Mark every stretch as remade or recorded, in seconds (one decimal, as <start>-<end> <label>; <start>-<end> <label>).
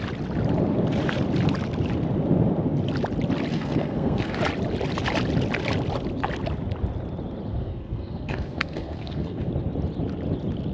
0.0-3.5 recorded; 3.5-4.4 remade; 4.4-7.5 recorded; 7.5-9.5 remade; 9.5-10.7 recorded